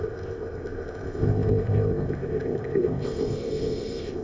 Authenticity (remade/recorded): remade